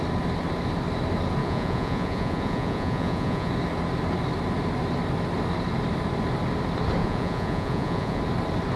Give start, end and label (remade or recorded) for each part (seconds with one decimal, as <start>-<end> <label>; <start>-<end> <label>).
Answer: 0.0-1.4 recorded; 1.4-3.5 remade; 3.5-7.0 recorded; 7.0-8.2 remade; 8.2-8.8 recorded